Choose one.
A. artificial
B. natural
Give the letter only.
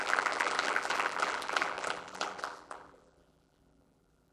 A